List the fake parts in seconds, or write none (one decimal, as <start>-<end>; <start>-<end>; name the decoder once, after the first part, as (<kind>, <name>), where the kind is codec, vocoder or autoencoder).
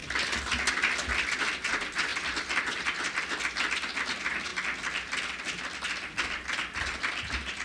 none